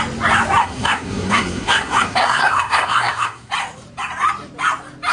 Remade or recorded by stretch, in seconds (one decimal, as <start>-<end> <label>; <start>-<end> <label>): 0.0-0.6 recorded; 0.6-3.5 remade; 3.5-5.1 recorded